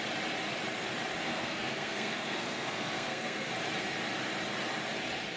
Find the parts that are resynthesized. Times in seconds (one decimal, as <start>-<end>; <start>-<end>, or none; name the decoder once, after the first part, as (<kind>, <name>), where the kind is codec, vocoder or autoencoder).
1.3-3.5 (codec, SNAC)